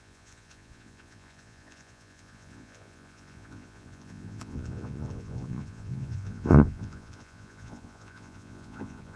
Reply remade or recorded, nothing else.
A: remade